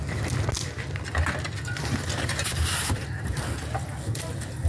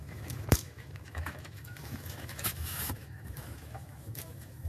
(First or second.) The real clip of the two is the first